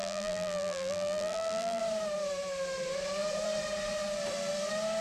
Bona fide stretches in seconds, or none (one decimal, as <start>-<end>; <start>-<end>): 1.8-5.0